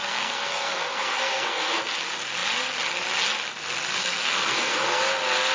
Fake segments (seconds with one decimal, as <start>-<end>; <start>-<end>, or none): 0.0-1.9; 4.0-5.0